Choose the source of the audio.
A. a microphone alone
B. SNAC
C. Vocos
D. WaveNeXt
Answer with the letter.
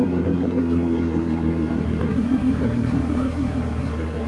B